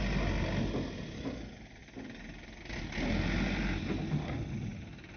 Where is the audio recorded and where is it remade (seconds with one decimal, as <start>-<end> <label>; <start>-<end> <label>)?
0.0-5.2 recorded